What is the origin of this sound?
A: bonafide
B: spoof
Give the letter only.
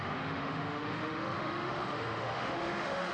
B